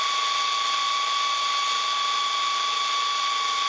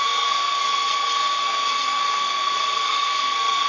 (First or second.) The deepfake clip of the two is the second